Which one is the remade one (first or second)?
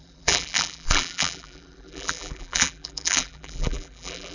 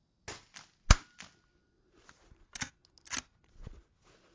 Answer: first